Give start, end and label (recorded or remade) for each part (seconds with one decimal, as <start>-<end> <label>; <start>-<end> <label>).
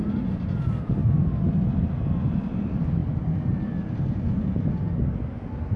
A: 0.0-5.8 recorded